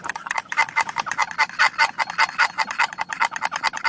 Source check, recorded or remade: recorded